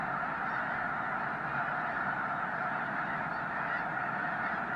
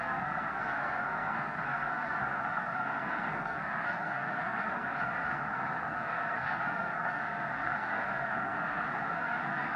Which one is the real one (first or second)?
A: first